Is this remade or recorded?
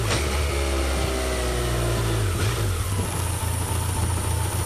recorded